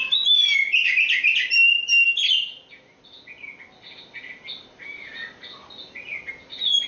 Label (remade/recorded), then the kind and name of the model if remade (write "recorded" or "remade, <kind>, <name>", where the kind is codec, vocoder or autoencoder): recorded